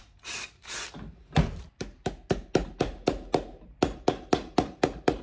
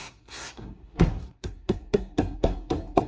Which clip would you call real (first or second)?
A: first